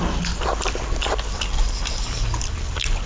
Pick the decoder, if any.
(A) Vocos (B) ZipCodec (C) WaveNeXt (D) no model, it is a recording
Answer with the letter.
D